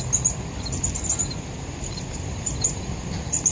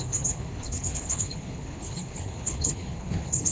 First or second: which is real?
first